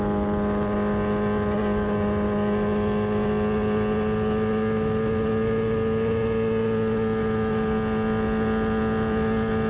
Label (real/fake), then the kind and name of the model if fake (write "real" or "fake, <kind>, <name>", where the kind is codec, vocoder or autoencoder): real